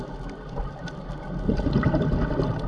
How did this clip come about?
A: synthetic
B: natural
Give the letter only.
B